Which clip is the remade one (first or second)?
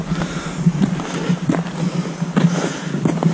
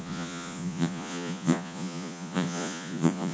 second